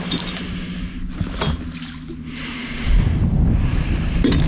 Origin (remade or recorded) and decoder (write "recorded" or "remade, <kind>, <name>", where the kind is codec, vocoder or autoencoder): recorded